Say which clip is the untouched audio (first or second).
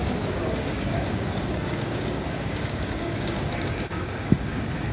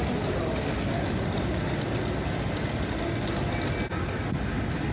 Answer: second